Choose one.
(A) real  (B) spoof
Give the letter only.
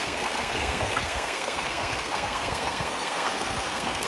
B